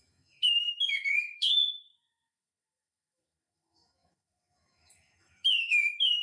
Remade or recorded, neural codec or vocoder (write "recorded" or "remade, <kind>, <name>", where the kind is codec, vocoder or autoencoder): remade, autoencoder, DAC-VAE